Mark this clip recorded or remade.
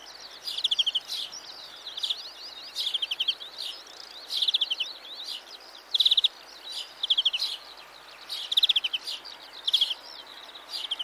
recorded